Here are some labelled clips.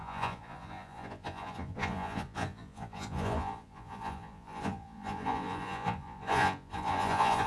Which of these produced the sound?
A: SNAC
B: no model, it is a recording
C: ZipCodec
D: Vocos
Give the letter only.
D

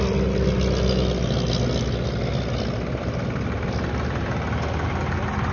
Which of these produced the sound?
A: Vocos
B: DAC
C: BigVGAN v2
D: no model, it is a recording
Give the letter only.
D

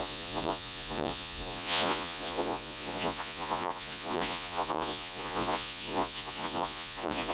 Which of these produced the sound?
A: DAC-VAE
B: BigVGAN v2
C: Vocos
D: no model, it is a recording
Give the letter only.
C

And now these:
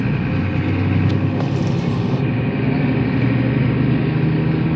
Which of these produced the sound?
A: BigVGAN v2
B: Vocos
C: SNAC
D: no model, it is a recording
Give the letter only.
D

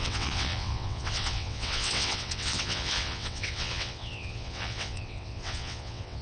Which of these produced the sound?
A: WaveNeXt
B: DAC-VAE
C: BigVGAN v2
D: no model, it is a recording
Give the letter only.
A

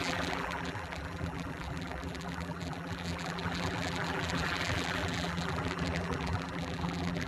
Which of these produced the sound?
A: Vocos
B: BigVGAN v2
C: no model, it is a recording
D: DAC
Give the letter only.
B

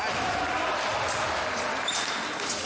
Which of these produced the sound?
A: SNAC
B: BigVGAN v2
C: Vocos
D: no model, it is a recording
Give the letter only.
D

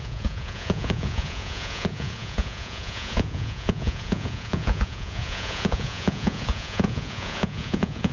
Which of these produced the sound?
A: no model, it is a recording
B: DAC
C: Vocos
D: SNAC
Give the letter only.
C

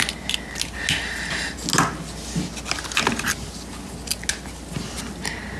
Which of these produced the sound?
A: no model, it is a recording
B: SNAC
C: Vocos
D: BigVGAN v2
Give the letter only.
A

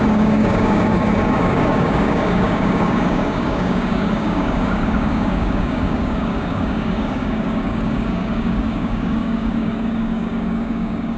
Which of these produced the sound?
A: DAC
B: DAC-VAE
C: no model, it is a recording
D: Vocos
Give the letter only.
A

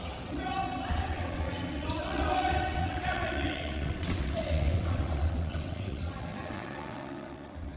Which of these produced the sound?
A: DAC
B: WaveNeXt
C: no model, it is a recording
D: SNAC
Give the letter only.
B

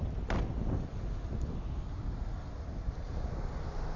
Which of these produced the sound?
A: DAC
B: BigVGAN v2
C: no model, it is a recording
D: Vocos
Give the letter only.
C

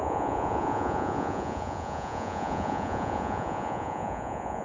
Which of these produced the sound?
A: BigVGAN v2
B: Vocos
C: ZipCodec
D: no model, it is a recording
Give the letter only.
B